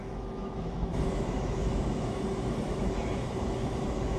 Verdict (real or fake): fake